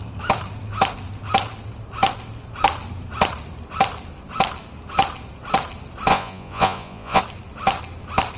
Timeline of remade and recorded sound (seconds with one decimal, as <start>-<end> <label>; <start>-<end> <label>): 0.0-6.1 recorded; 6.1-7.2 remade; 7.2-8.4 recorded